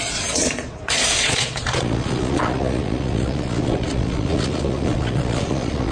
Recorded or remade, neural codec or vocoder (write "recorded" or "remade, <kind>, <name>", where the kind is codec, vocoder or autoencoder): remade, vocoder, Vocos